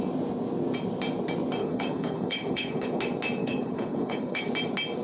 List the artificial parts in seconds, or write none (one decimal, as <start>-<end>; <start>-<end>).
1.6-3.0; 3.4-4.5